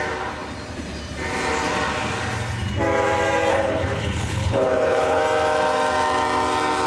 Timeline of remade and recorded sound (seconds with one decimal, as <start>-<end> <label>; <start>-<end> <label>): 0.0-3.5 recorded; 3.5-5.2 remade; 5.2-6.9 recorded